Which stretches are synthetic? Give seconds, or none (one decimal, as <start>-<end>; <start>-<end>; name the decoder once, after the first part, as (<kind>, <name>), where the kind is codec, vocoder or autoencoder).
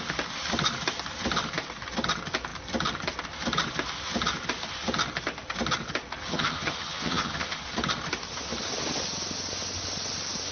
6.3-7.6 (vocoder, HiFi-GAN)